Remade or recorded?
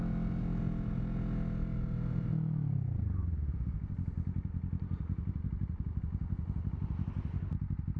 recorded